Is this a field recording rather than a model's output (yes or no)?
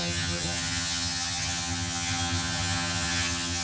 no